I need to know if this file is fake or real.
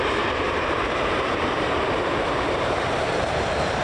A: fake